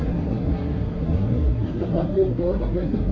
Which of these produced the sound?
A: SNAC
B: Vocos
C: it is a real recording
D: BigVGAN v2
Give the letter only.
A